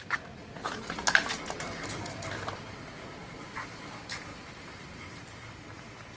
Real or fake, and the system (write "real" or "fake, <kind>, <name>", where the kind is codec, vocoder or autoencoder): real